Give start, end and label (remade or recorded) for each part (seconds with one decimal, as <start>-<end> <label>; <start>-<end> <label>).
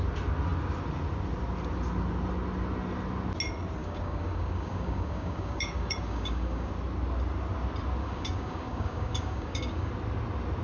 0.0-3.8 recorded; 3.8-6.7 remade; 6.7-8.0 recorded; 8.0-9.9 remade; 9.9-10.6 recorded